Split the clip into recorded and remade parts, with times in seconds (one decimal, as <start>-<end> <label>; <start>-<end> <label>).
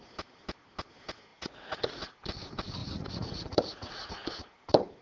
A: 0.0-1.3 recorded; 1.3-2.1 remade; 2.1-2.8 recorded; 2.8-4.1 remade; 4.1-5.0 recorded